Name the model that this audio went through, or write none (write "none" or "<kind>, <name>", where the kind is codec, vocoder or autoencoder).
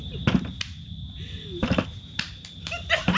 none